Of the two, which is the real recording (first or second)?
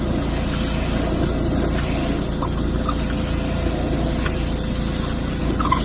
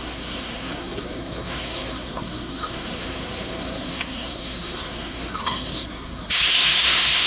first